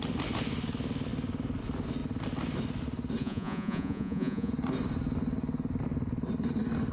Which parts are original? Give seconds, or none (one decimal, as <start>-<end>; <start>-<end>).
0.0-3.2; 4.5-6.9